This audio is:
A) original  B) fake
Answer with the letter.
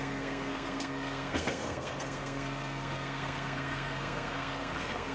B